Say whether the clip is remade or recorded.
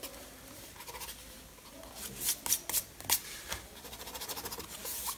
recorded